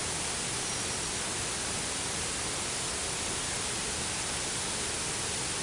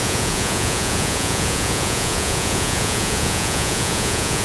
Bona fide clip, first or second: first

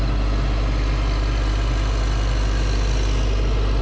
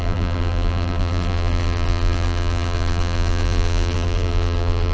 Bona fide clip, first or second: first